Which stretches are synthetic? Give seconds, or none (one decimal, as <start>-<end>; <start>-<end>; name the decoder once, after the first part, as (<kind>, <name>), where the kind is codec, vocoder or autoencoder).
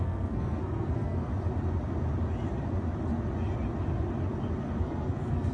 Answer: 0.0-1.3 (codec, SNAC); 4.6-5.5